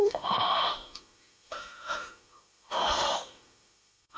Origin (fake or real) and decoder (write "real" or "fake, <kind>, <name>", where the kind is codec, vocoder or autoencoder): fake, autoencoder, DAC-VAE